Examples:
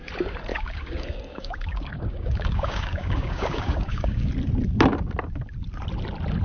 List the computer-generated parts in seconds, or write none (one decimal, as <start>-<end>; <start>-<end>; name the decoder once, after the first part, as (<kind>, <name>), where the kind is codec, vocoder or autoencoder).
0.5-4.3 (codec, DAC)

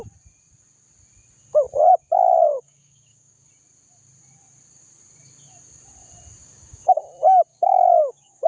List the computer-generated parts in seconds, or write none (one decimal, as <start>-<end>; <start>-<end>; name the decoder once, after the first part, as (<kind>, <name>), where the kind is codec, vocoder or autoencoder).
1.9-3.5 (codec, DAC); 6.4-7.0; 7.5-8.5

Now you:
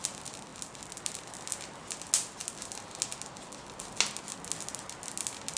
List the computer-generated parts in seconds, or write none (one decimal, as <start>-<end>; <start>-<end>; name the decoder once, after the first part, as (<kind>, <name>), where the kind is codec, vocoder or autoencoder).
none

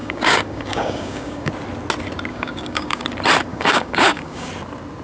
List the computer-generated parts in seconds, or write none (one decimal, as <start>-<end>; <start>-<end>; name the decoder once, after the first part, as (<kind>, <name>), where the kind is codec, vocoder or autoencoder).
0.0-1.5 (codec, DAC); 2.3-3.0; 3.5-4.5

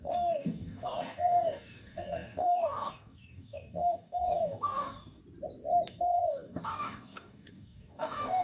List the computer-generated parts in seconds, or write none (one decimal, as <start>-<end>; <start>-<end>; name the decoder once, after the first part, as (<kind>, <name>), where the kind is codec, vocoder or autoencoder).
0.0-5.2 (codec, DAC); 5.9-8.4

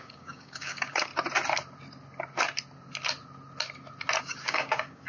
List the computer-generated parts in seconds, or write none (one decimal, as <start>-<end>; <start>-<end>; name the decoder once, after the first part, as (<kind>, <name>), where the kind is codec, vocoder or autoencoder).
0.0-1.1 (codec, DAC); 4.2-5.1

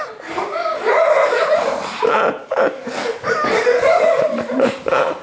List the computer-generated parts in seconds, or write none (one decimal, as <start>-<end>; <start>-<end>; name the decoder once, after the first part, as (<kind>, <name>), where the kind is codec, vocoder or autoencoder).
2.4-4.2 (codec, DAC)

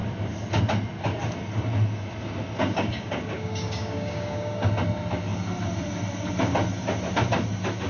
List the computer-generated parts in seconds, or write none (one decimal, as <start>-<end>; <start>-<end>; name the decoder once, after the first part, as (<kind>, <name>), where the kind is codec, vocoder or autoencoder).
2.6-4.7 (codec, DAC)